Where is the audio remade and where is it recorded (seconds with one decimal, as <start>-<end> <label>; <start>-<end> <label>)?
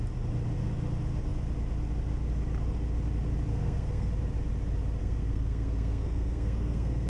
0.0-3.5 recorded; 3.5-4.1 remade; 4.1-5.0 recorded; 5.0-7.1 remade